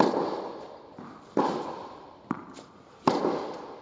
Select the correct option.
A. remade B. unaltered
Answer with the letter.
B